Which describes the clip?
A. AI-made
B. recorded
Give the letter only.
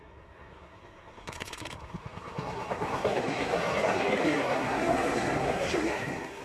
A